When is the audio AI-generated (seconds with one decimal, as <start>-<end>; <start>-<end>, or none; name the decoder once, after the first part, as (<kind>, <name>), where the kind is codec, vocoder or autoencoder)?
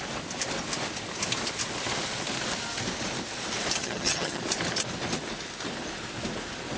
3.8-4.4 (vocoder, HiFi-GAN)